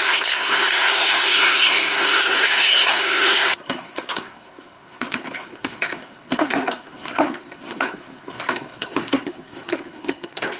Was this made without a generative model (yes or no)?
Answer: no